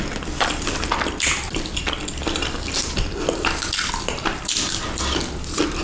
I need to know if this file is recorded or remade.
recorded